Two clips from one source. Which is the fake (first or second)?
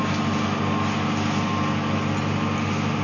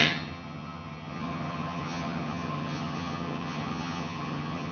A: second